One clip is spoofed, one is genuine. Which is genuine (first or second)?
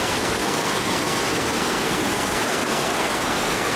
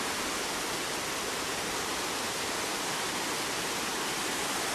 second